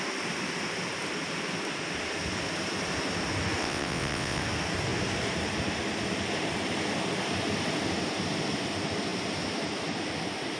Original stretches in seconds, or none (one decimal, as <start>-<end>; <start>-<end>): 0.0-3.6; 4.4-10.6